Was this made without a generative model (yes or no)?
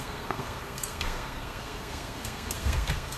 no